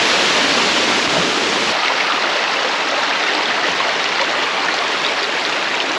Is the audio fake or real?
real